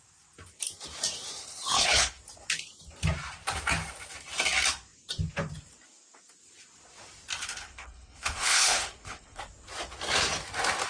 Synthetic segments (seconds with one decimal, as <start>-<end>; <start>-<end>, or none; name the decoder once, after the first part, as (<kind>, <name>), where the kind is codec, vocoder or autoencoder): 1.4-2.2 (codec, HILCodec); 7.4-9.4